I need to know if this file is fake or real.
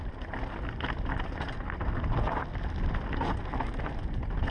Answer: real